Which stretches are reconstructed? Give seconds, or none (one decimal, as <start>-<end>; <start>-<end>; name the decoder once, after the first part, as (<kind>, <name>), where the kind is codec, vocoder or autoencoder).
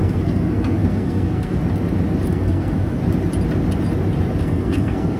0.0-1.6 (codec, SNAC); 2.3-3.0; 4.4-5.2